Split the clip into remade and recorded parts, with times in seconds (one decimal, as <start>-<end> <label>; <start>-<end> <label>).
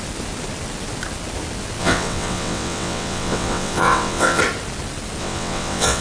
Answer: 0.0-1.8 recorded; 1.8-4.4 remade; 4.4-5.2 recorded; 5.2-6.0 remade